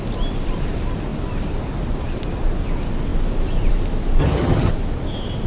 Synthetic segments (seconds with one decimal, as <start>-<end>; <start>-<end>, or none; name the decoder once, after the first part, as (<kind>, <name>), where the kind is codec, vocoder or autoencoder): 4.2-4.7 (vocoder, HiFi-GAN)